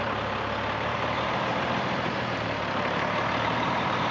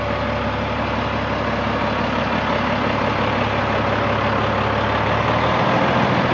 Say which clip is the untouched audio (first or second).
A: second